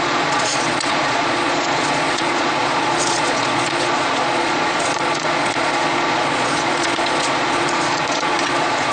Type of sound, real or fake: fake